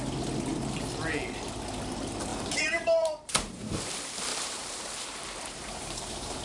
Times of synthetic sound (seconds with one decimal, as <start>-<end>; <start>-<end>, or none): 2.3-3.9; 4.3-6.4